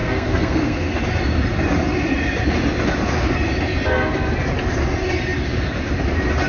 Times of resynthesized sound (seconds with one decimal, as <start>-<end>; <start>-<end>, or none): 0.0-1.0